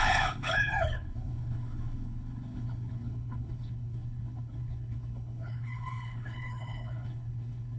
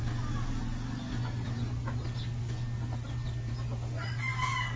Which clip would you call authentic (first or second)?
second